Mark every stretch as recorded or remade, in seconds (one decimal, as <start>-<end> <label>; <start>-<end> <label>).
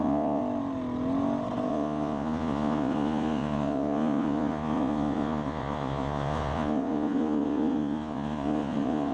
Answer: 0.0-0.4 remade; 0.4-1.7 recorded; 1.7-9.1 remade